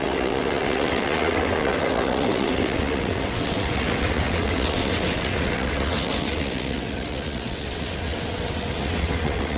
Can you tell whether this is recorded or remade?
remade